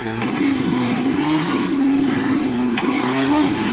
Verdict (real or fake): fake